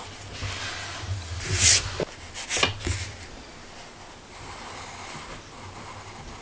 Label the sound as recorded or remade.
recorded